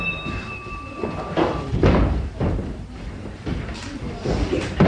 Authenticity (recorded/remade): remade